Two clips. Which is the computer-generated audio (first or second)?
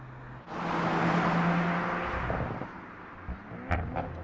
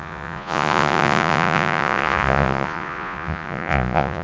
second